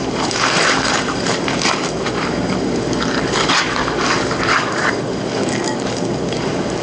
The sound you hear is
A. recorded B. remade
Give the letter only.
B